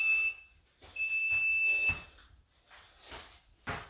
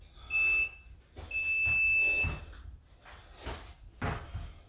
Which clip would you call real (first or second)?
second